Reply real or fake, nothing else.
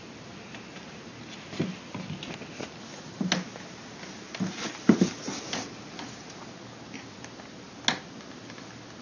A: real